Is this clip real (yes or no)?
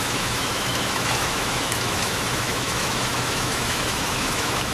no